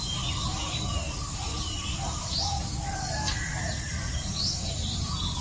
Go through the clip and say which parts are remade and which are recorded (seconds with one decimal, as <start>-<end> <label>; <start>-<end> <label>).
0.0-5.4 remade

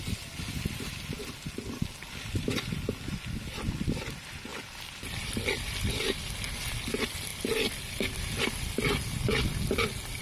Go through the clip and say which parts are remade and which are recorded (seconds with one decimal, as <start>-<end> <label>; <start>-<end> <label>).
0.0-10.2 recorded

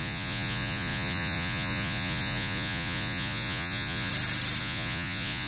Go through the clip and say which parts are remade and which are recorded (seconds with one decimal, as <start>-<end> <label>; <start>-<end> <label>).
0.0-4.1 remade; 4.1-4.6 recorded; 4.6-5.5 remade

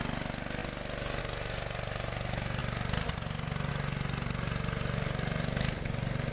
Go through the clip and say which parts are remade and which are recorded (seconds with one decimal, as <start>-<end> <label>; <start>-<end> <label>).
0.0-6.3 recorded

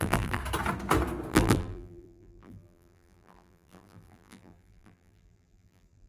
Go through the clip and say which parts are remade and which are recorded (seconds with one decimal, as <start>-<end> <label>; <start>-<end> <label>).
0.0-0.4 remade; 0.4-1.3 recorded; 1.3-6.1 remade

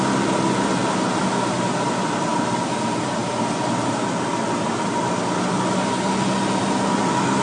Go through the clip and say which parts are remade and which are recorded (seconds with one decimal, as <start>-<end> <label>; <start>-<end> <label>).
0.0-7.4 recorded